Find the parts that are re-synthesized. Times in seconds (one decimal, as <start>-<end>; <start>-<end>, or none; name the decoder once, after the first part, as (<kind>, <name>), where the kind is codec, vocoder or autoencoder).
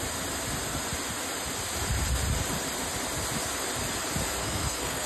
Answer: 4.4-5.1 (codec, SNAC)